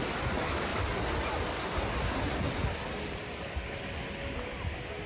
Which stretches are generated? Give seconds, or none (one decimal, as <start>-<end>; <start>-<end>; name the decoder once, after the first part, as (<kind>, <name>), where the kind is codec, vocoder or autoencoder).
none